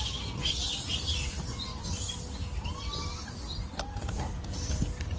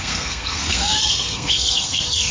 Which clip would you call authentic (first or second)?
first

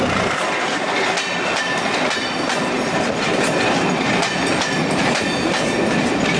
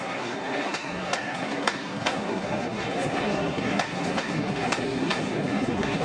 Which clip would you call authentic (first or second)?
first